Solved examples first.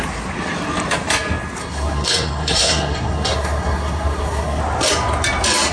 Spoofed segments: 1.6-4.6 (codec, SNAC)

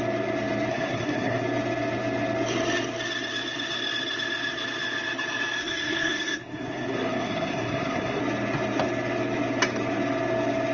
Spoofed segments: 0.7-1.4 (codec, SNAC); 5.6-8.2

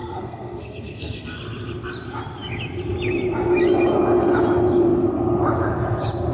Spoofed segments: 0.0-1.4 (codec, SNAC)

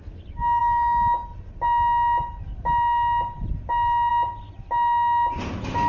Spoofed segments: none

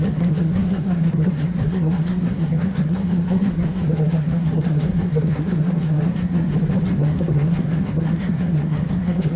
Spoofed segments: 0.0-6.5 (codec, SNAC); 7.0-9.4

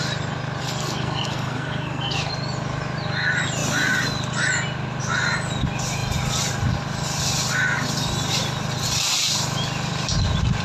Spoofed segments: 0.6-2.3 (codec, SNAC)

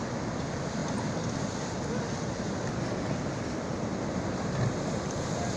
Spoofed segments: none

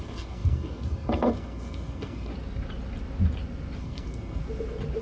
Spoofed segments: 0.0-2.3 (codec, SNAC); 3.8-4.4